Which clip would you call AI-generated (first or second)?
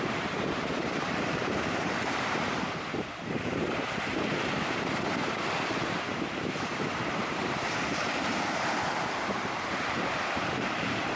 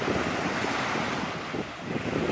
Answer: first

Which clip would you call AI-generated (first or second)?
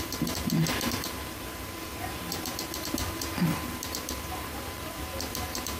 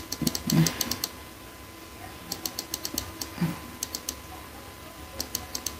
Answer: first